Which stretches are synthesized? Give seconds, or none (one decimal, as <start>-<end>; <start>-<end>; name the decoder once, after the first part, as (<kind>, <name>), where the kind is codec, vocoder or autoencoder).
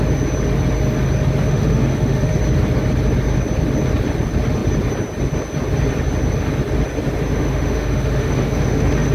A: 1.4-2.3 (autoencoder, DAC-VAE); 7.3-9.1